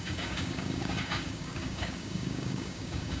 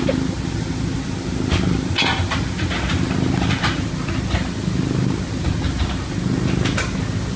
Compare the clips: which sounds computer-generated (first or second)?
first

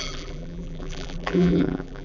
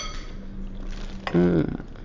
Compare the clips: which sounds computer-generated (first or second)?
first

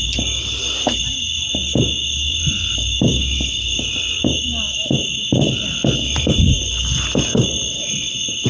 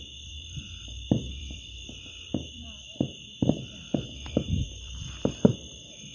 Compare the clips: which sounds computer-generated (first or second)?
second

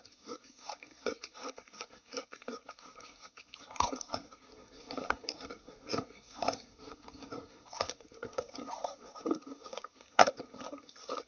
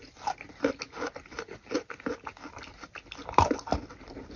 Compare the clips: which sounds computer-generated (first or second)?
first